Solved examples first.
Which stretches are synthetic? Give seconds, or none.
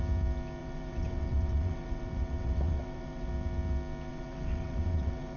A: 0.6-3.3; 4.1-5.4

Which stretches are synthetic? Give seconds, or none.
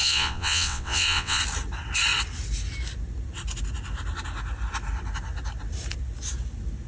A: 0.0-1.4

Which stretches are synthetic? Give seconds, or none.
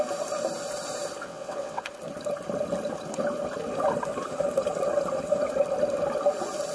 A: 1.2-1.9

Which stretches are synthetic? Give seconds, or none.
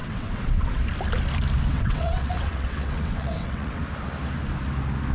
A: 0.0-0.8; 1.7-3.8